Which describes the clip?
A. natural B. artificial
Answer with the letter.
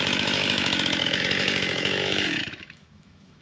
B